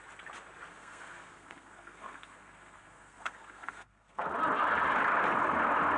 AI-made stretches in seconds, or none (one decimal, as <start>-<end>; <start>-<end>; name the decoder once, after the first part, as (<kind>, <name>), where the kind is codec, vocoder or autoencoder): 0.7-4.3 (codec, SNAC)